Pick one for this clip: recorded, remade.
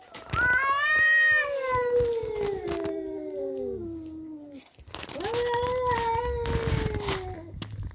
recorded